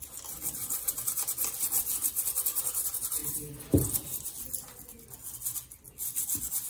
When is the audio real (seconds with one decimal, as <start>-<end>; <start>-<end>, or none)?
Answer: 0.0-2.0; 2.8-6.7